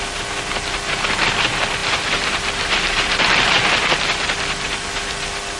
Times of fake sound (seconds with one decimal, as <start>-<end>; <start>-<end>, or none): none

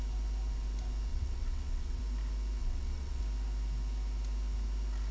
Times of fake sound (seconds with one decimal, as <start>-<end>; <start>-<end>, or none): 1.1-2.0; 2.6-3.2

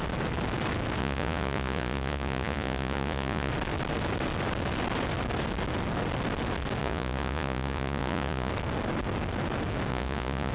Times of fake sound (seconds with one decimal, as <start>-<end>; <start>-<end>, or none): 1.0-3.5; 6.8-8.5; 9.9-10.5

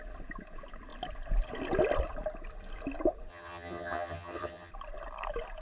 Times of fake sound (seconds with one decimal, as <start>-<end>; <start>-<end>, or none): 3.3-4.7